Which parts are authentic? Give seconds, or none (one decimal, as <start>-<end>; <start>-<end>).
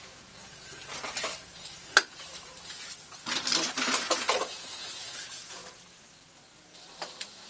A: 0.8-4.0; 5.6-7.5